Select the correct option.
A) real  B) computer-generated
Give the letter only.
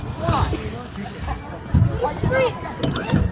A